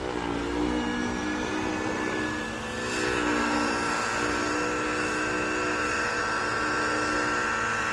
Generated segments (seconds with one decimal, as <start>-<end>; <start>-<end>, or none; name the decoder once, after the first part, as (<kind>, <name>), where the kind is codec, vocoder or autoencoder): none